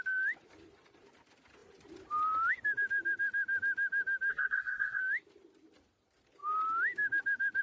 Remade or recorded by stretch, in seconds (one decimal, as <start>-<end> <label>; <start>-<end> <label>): 0.0-4.3 recorded; 4.3-5.0 remade; 5.0-7.6 recorded